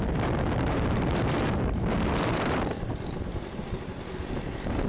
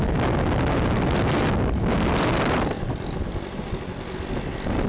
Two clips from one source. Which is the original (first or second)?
second